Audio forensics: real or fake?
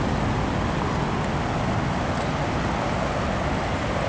real